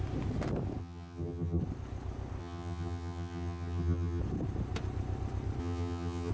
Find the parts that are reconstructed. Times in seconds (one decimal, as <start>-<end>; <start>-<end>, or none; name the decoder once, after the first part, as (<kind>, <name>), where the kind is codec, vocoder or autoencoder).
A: 0.8-1.6 (vocoder, HiFi-GAN); 2.4-4.2; 5.6-6.3